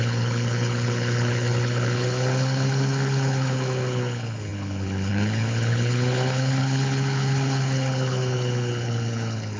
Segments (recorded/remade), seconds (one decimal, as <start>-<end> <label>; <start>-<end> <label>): 0.0-9.6 remade